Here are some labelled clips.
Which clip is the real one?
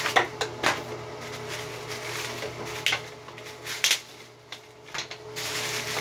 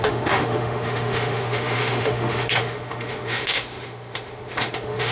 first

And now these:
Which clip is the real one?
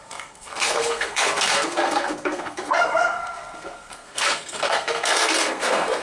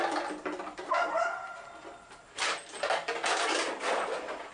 second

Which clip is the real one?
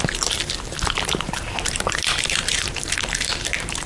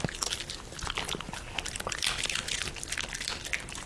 second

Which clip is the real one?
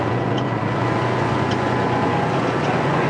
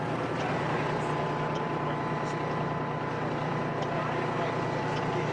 second